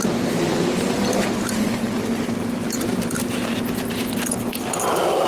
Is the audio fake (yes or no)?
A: yes